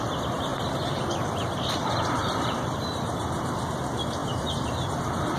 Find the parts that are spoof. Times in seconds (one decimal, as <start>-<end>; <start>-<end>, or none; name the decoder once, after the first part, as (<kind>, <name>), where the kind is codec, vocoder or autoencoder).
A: 0.5-3.7 (vocoder, BigVGAN v2); 4.2-5.0